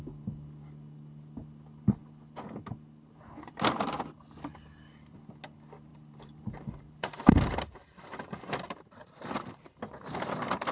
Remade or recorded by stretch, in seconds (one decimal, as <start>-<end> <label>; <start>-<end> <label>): 0.0-5.9 recorded; 5.9-9.0 remade; 9.0-10.7 recorded